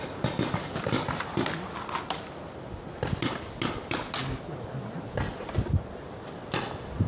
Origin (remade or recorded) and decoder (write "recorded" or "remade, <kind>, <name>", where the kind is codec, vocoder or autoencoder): recorded